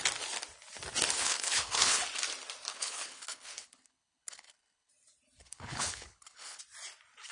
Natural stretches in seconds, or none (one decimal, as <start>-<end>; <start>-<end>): 0.0-1.2; 2.0-2.7; 4.9-5.4; 6.6-7.3